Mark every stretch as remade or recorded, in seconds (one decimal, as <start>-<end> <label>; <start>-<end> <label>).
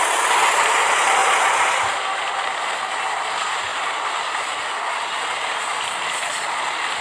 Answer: 0.0-7.0 recorded